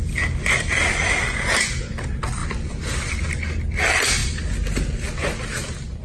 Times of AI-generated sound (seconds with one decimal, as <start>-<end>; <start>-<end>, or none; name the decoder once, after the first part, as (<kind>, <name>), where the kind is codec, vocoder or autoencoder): none